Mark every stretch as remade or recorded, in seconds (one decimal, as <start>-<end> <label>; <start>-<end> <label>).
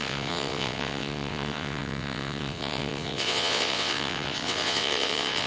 0.0-5.5 remade